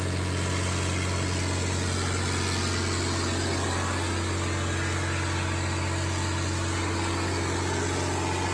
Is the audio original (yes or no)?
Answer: yes